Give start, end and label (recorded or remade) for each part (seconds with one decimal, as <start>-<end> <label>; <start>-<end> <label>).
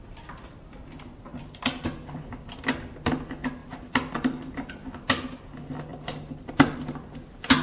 0.0-1.3 recorded; 1.3-2.2 remade; 2.2-3.6 recorded; 3.6-4.7 remade; 4.7-5.9 recorded; 5.9-6.5 remade; 6.5-7.6 recorded